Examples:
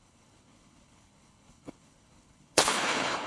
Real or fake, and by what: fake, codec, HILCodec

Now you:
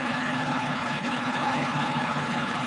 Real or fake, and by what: fake, codec, HILCodec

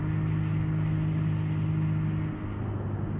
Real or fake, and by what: real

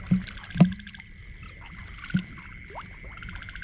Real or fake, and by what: real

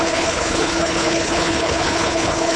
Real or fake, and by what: fake, codec, HILCodec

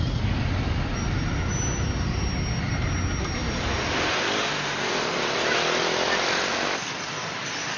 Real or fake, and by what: real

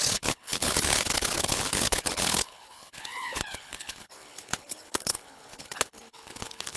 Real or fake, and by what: fake, codec, HILCodec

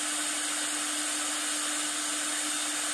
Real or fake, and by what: real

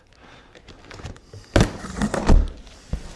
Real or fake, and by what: real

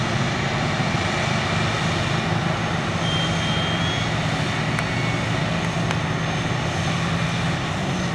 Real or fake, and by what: real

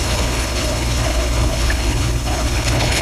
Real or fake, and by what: fake, codec, HILCodec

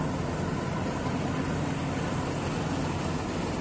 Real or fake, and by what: real